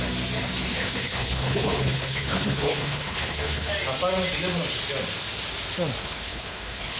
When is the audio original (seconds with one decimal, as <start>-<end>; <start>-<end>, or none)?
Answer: 0.0-0.7; 3.7-6.0